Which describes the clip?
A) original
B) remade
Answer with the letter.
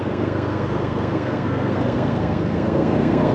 B